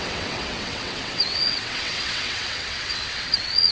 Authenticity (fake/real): fake